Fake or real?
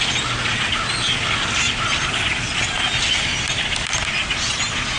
real